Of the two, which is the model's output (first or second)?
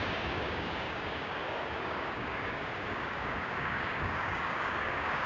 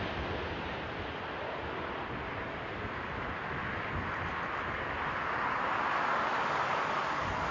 first